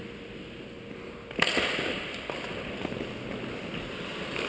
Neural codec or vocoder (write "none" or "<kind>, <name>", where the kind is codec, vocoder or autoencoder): none